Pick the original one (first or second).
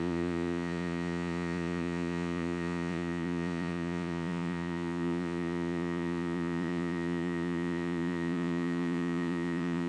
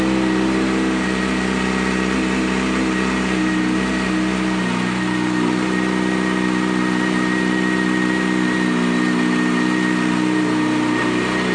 second